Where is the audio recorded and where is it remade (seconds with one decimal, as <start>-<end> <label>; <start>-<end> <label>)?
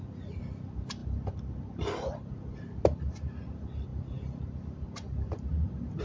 0.0-6.0 recorded